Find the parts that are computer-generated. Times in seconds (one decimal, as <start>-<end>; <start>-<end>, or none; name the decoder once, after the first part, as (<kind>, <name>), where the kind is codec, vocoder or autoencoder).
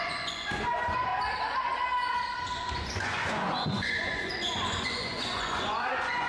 0.0-1.1 (vocoder, Vocos); 2.6-6.3